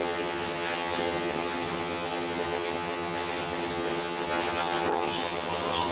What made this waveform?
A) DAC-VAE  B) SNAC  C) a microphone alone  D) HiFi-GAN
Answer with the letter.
D